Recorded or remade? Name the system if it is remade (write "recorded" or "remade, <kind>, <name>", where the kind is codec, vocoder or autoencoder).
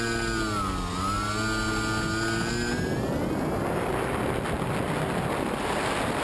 recorded